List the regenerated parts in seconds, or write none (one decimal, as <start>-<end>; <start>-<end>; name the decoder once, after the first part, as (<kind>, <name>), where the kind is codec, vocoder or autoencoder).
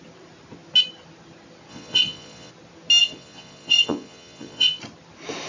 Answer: 1.7-2.5 (vocoder, Vocos); 3.0-4.8